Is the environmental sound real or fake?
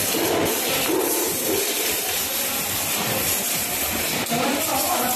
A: real